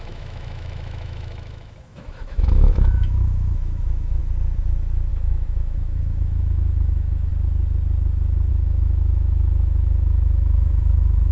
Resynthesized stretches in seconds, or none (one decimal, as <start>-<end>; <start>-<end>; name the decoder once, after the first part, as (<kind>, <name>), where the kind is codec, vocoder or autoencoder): 0.0-4.2 (autoencoder, DAC-VAE); 5.1-7.3; 8.5-11.3